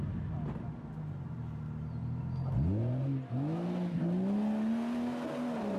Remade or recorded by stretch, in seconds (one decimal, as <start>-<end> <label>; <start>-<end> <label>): 0.0-5.8 recorded